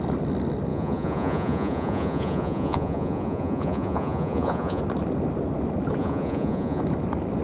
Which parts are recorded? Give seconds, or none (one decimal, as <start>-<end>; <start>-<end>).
0.0-0.7; 4.8-6.0; 6.8-7.4